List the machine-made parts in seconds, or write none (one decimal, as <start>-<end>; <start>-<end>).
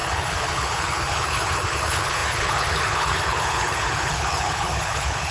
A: 0.0-5.3